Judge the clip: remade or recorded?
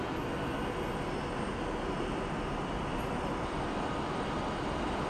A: recorded